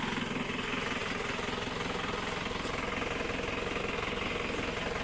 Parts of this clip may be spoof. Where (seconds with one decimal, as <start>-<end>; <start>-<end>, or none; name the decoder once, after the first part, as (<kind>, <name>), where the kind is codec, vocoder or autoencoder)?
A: none